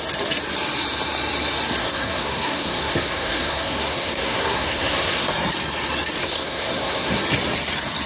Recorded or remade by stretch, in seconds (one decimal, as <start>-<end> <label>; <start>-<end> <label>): 0.0-1.8 recorded; 1.8-5.3 remade; 5.3-6.2 recorded; 6.2-7.2 remade; 7.2-8.1 recorded